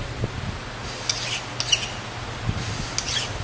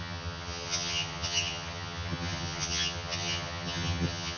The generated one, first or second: second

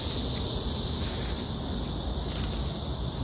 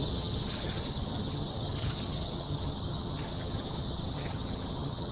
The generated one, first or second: second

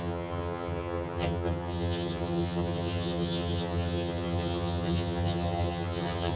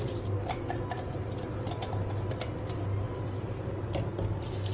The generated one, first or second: first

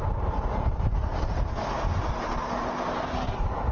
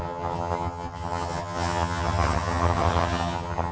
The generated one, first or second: second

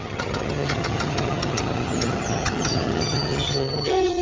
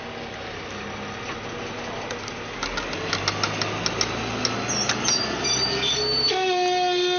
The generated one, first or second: first